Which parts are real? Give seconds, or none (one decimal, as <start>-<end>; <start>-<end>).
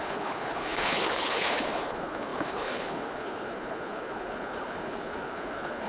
none